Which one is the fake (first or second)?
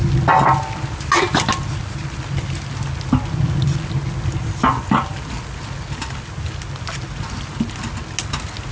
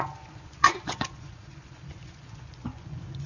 second